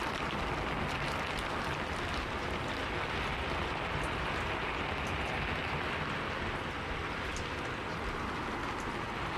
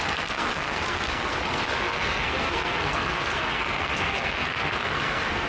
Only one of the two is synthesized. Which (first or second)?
second